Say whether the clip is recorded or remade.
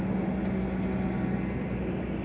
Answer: recorded